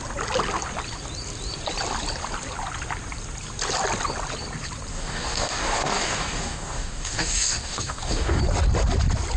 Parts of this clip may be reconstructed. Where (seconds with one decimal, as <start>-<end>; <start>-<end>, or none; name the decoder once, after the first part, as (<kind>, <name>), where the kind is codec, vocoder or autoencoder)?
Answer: 4.9-8.4 (codec, DAC)